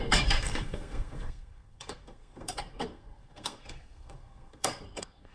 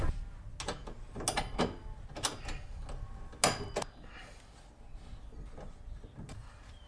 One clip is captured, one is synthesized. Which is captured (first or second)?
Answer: second